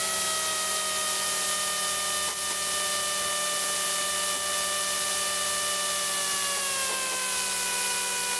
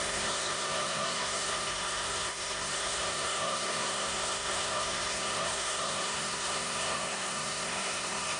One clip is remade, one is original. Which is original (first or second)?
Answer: first